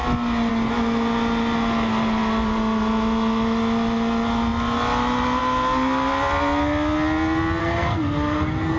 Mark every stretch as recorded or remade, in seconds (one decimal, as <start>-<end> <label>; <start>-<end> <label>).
0.0-7.6 recorded; 7.6-8.8 remade